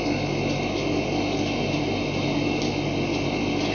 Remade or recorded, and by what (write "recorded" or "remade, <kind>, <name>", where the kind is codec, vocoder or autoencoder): recorded